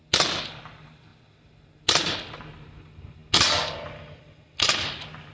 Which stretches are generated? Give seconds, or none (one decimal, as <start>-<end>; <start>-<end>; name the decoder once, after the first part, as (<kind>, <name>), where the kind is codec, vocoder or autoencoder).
none